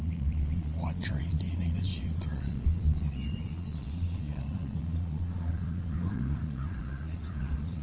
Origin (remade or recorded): remade